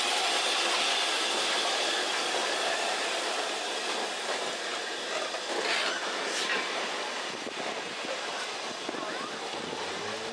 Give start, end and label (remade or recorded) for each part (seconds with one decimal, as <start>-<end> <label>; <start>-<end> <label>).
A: 0.0-2.4 recorded; 2.4-3.5 remade; 3.5-10.3 recorded